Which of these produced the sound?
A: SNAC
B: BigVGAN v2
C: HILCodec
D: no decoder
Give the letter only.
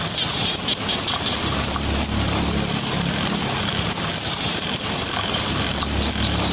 D